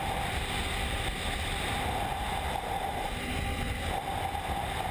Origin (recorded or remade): recorded